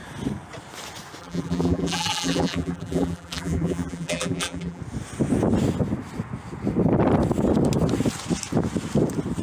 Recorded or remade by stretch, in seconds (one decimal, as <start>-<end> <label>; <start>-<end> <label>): 0.0-1.2 recorded; 1.2-4.8 remade; 4.8-9.4 recorded